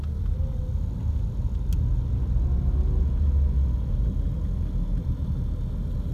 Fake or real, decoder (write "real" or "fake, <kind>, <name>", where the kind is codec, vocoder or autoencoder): real